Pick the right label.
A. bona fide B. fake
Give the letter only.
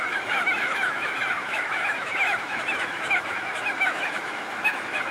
B